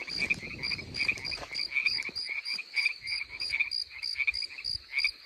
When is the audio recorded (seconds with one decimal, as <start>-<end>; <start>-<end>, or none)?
0.0-1.8; 3.6-5.3